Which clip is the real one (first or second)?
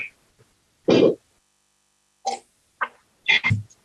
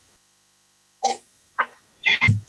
first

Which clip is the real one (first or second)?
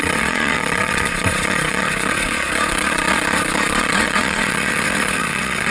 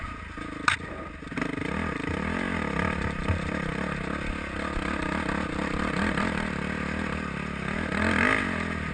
second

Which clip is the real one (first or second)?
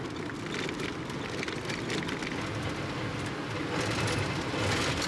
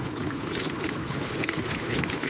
first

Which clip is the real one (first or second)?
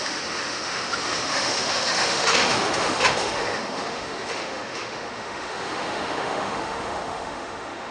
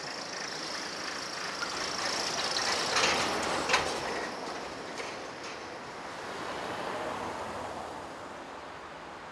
second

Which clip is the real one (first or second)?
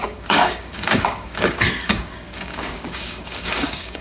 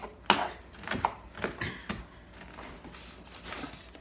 second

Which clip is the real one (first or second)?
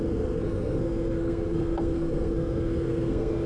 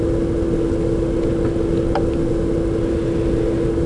second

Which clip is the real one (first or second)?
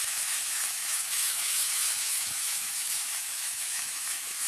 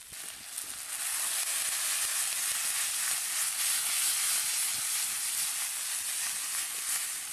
second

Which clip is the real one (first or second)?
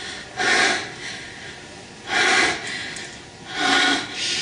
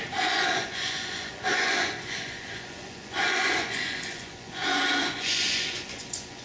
first